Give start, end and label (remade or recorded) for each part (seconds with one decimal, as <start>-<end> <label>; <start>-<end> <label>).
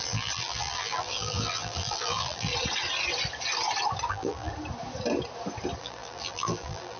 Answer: 0.0-2.5 remade; 2.5-4.1 recorded; 4.1-4.5 remade; 4.5-5.8 recorded; 5.8-7.0 remade